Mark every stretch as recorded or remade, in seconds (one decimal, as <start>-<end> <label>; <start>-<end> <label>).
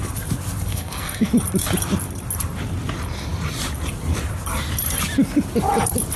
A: 0.0-0.7 recorded; 0.7-1.3 remade; 1.3-6.2 recorded